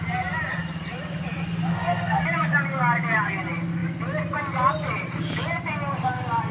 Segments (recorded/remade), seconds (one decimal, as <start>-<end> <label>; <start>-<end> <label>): 0.0-1.7 recorded; 1.7-2.2 remade; 2.2-6.5 recorded